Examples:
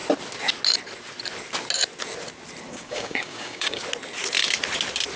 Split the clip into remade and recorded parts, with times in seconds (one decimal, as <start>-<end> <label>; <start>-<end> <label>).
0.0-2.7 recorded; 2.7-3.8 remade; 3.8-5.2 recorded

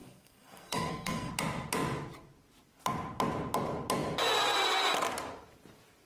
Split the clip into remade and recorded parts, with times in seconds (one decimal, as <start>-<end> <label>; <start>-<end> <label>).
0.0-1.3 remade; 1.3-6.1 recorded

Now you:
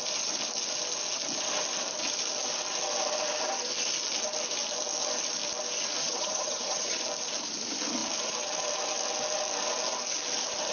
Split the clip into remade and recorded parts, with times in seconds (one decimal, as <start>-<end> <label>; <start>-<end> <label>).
0.0-6.0 recorded; 6.0-7.0 remade; 7.0-10.7 recorded